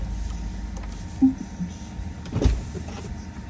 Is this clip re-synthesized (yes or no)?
no